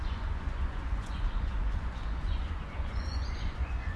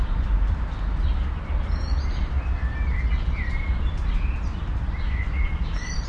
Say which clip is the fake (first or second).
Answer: first